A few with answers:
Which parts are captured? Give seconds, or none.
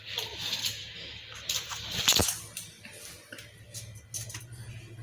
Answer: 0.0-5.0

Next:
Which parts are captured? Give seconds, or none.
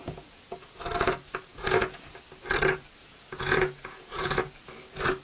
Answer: 0.8-1.5; 2.1-3.0; 4.4-5.2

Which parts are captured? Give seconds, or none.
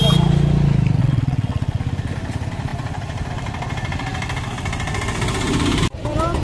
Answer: 0.0-1.0; 1.8-6.4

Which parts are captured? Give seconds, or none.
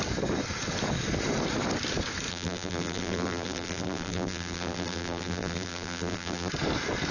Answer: 0.0-2.3; 6.5-7.1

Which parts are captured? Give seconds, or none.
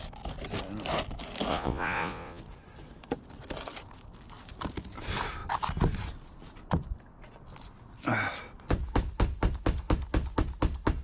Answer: 0.0-1.5; 2.4-11.0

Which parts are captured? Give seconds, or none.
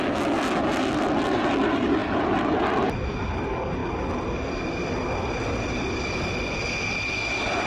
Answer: 0.0-7.7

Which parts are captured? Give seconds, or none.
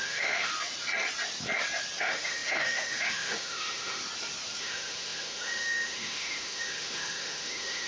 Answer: 0.5-2.0; 4.0-4.6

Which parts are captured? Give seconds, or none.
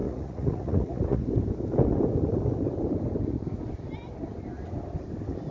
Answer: 1.3-5.5